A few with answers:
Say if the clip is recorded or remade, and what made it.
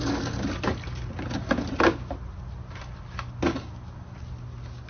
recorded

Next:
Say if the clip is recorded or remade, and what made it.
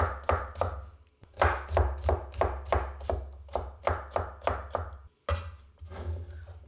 recorded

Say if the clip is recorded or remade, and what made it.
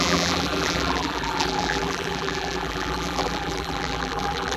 remade, vocoder, BigVGAN v2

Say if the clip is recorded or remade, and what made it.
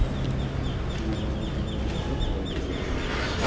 recorded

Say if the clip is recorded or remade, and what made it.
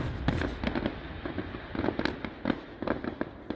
recorded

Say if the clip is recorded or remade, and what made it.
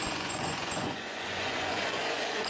remade, vocoder, Vocos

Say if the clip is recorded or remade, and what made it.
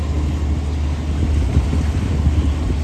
recorded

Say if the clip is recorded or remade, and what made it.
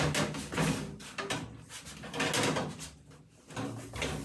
recorded